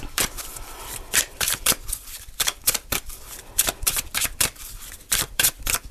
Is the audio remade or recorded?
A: remade